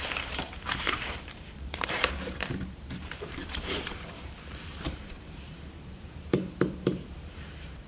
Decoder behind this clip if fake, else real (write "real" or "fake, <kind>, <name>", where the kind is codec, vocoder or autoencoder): fake, vocoder, BigVGAN v2